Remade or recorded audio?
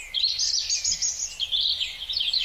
recorded